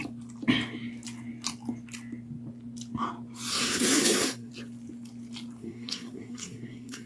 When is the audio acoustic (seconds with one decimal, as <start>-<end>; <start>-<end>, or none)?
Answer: 0.0-3.5; 4.5-5.6